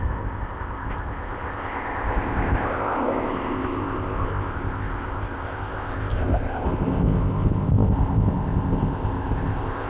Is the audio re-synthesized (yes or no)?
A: yes